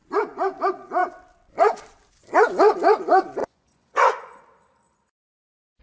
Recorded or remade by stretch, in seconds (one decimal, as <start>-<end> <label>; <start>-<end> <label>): 0.0-3.4 recorded; 3.4-4.4 remade; 4.4-5.8 recorded